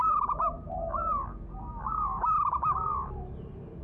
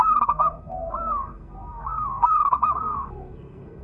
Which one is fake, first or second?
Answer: second